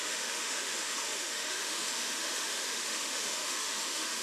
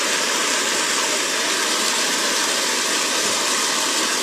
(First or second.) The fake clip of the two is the first